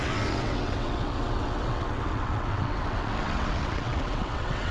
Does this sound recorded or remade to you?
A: remade